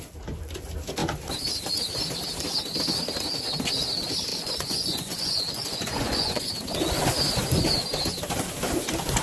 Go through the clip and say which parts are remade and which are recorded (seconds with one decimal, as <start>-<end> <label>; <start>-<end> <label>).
0.0-4.3 recorded; 4.3-6.5 remade; 6.5-9.2 recorded

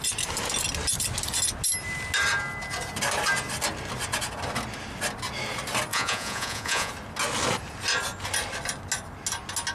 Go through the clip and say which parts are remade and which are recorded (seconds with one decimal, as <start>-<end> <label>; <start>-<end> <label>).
0.0-5.9 recorded; 5.9-6.9 remade; 6.9-9.7 recorded

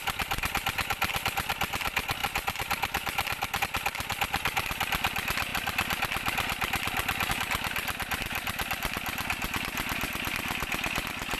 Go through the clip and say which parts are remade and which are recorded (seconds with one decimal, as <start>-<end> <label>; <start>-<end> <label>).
0.0-11.4 recorded

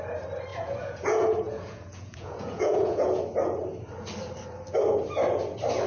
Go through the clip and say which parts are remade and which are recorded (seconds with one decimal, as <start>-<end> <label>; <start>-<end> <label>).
0.0-0.5 recorded; 0.5-3.2 remade; 3.2-5.9 recorded

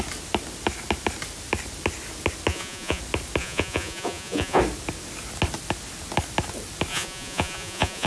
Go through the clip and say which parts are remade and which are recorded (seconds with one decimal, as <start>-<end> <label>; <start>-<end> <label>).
0.0-2.5 recorded; 2.5-3.0 remade; 3.0-3.4 recorded; 3.4-4.6 remade; 4.6-6.9 recorded; 6.9-8.1 remade

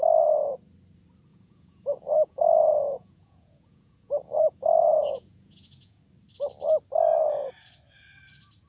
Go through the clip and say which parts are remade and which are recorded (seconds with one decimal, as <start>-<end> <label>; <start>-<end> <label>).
0.0-1.3 recorded; 1.3-6.0 remade; 6.0-8.7 recorded